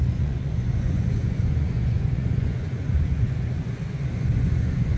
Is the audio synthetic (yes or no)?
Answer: yes